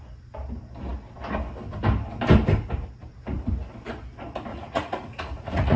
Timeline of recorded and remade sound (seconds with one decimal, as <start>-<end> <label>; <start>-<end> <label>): 0.0-4.5 recorded; 4.5-5.8 remade

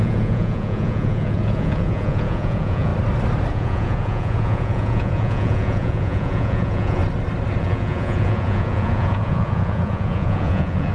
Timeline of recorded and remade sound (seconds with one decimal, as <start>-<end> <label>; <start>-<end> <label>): 0.0-2.9 remade; 2.9-3.5 recorded; 3.5-7.0 remade; 7.0-7.6 recorded; 7.6-10.9 remade

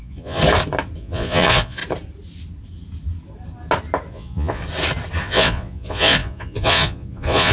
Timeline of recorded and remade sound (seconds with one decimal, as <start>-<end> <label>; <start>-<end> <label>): 0.0-0.4 remade; 0.4-1.0 recorded; 1.0-1.8 remade; 1.8-4.1 recorded; 4.1-4.6 remade; 4.6-5.2 recorded; 5.2-7.5 remade

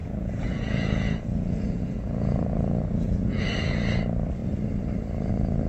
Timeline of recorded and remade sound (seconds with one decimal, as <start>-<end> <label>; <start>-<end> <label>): 0.0-3.4 remade; 3.4-5.7 recorded

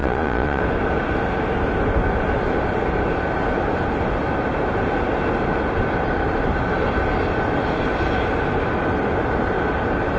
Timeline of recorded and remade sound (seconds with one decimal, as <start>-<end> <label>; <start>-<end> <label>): 0.0-0.6 remade; 0.6-10.2 recorded

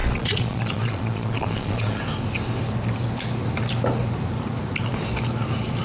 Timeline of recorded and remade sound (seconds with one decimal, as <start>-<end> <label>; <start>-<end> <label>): 0.0-2.0 remade; 2.0-5.8 recorded